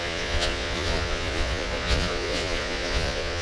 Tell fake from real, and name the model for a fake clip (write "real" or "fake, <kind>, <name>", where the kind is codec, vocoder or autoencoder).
fake, vocoder, Vocos